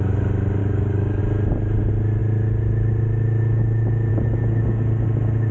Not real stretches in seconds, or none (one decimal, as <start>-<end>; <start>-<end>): 0.6-1.2